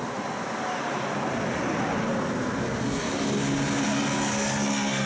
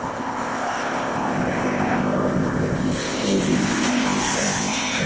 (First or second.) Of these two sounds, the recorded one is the first